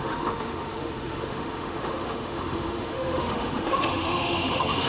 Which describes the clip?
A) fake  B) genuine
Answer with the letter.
A